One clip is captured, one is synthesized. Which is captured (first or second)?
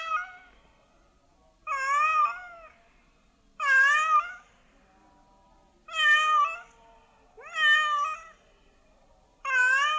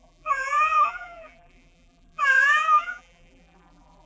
first